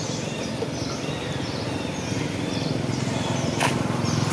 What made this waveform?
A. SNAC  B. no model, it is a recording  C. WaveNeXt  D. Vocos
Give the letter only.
B